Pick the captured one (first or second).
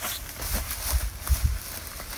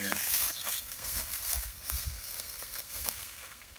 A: first